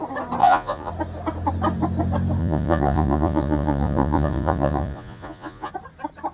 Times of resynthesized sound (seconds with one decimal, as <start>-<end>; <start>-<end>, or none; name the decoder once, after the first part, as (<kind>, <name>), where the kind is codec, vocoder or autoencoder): 0.4-0.9 (vocoder, Vocos); 2.4-5.7